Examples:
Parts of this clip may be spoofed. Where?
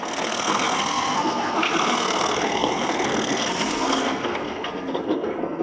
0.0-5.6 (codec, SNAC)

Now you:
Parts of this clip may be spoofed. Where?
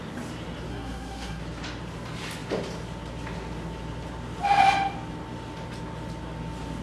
0.7-1.4 (codec, SNAC)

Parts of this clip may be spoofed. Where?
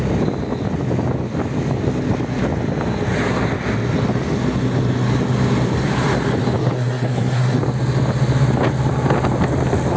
6.6-7.6 (codec, SNAC)